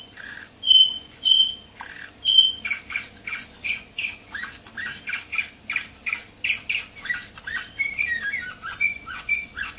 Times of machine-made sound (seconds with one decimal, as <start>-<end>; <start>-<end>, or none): 0.0-1.4; 2.9-4.7; 8.7-9.8